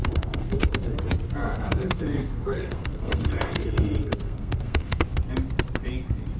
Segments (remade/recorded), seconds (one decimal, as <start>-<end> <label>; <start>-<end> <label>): 0.0-0.9 remade; 0.9-1.4 recorded; 1.4-5.0 remade; 5.0-6.4 recorded